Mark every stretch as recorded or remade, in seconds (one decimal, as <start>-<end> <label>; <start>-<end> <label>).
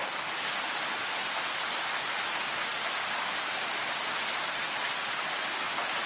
0.0-6.1 recorded